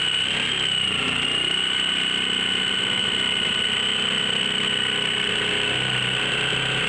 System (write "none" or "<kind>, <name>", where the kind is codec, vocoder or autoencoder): none